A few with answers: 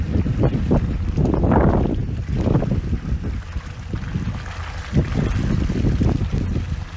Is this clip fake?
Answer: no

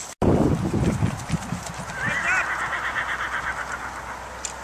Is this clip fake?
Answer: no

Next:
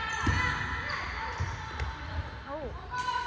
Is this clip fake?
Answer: no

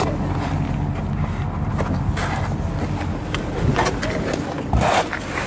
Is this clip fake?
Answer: no